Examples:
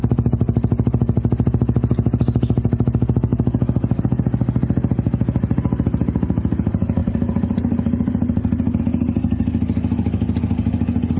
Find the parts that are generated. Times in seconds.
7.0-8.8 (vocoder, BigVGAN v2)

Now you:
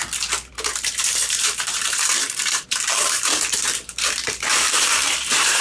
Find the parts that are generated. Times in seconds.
0.5-5.6 (vocoder, BigVGAN v2)

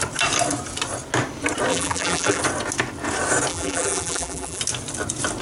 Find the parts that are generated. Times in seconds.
1.7-2.4 (vocoder, BigVGAN v2); 3.5-4.6

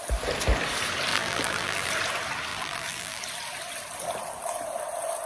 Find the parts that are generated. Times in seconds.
1.1-1.9 (vocoder, BigVGAN v2); 2.5-3.2

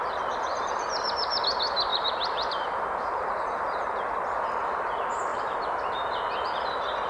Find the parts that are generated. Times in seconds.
0.5-1.4 (vocoder, BigVGAN v2); 1.9-3.5; 5.3-6.2